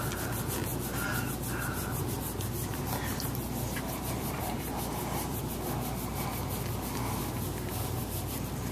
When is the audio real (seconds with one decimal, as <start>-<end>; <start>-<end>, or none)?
0.0-2.7; 5.4-8.7

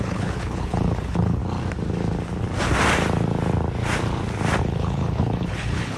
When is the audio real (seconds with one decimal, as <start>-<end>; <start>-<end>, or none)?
1.4-4.6

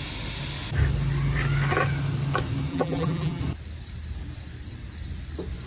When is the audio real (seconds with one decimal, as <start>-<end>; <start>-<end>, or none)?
0.0-2.7; 3.4-5.7